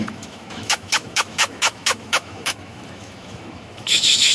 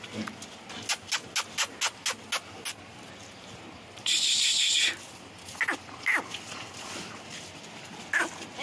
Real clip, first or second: second